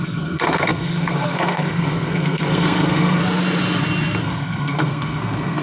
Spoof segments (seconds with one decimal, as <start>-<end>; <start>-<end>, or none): 0.0-3.2; 4.2-5.6